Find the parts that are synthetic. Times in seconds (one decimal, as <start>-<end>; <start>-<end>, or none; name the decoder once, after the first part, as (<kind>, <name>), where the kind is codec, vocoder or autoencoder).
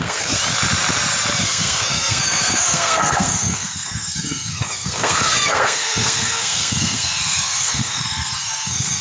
0.0-0.4 (codec, SNAC); 1.4-9.0